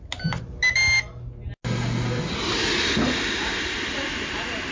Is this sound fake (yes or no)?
no